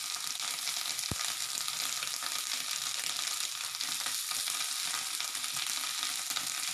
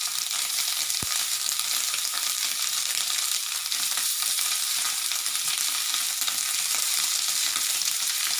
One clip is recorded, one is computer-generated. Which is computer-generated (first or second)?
second